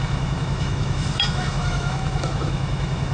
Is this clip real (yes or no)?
no